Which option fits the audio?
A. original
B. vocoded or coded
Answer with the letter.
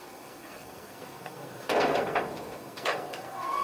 B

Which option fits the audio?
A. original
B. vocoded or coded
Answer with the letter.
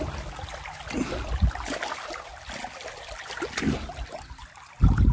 A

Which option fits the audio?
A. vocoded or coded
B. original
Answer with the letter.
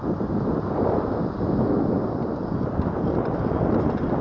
B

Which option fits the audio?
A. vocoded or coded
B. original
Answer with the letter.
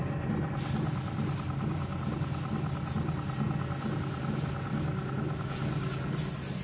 B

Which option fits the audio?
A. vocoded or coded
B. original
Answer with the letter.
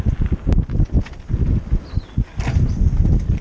B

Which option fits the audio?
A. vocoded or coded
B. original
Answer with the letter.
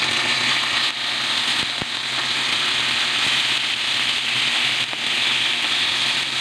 B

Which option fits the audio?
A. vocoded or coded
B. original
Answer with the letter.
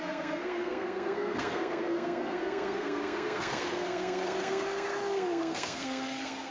A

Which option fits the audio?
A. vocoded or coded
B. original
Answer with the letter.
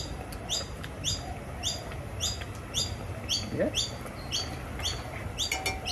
B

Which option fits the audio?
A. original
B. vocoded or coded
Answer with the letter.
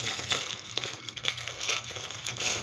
B